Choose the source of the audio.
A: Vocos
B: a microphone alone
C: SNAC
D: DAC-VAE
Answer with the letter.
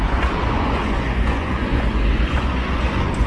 A